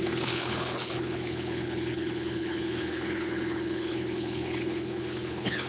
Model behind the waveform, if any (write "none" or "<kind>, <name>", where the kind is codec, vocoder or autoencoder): codec, HILCodec